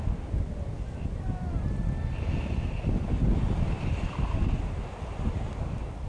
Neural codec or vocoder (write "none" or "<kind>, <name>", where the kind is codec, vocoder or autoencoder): none